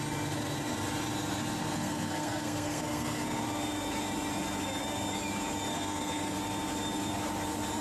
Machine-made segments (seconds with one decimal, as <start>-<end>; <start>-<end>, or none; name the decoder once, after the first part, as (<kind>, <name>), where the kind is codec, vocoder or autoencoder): 1.6-3.4 (codec, SNAC); 5.7-6.4